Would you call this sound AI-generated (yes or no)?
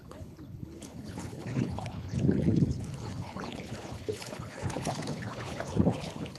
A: yes